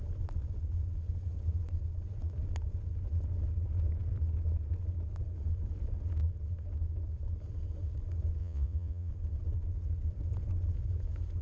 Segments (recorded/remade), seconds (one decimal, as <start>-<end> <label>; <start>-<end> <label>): 0.0-8.4 recorded; 8.4-9.1 remade; 9.1-11.4 recorded

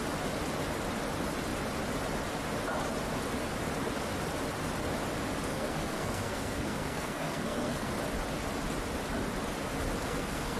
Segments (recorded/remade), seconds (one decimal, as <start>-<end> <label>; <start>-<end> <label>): 0.0-5.5 recorded; 5.5-7.9 remade; 7.9-10.0 recorded; 10.0-10.6 remade

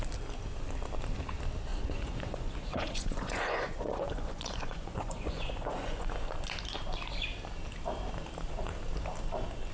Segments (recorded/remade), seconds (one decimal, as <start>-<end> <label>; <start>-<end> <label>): 0.0-1.7 recorded; 1.7-6.1 remade; 6.1-9.7 recorded

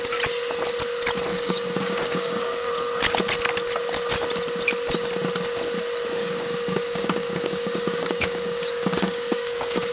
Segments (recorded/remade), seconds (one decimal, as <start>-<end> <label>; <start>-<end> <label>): 0.0-1.3 recorded; 1.3-2.7 remade; 2.7-6.2 recorded; 6.2-9.9 remade

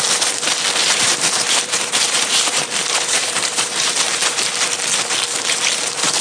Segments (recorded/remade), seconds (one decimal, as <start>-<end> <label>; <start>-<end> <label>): 0.0-0.8 recorded; 0.8-4.5 remade; 4.5-6.2 recorded

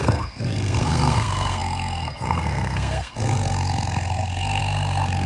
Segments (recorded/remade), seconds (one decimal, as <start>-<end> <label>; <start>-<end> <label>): 0.0-5.3 remade

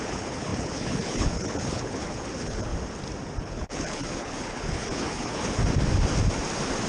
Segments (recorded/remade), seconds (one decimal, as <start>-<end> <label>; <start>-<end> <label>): 0.0-2.7 remade; 2.7-3.4 recorded; 3.4-5.6 remade; 5.6-6.9 recorded